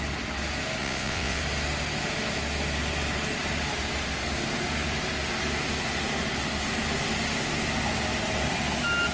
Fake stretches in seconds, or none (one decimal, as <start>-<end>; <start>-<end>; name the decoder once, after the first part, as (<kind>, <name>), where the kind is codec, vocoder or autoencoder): 0.8-1.4 (vocoder, WaveNeXt)